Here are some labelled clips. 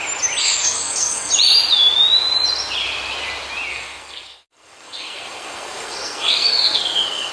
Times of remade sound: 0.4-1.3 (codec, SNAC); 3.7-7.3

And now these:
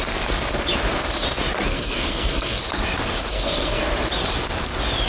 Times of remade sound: 1.7-2.6 (codec, SNAC); 3.3-3.8

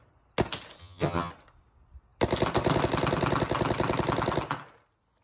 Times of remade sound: 0.8-1.3 (vocoder, HiFi-GAN)

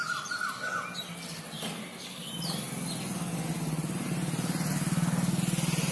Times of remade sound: none

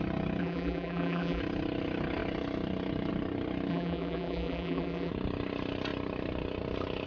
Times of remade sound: 0.4-1.4 (vocoder, BigVGAN v2); 3.7-5.1

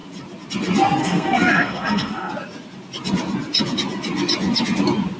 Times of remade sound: 1.0-2.3 (codec, SNAC)

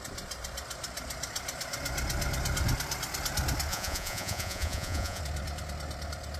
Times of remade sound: 3.7-5.2 (vocoder, Vocos)

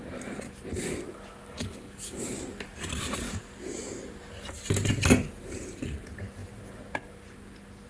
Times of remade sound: 1.4-2.2 (codec, DAC)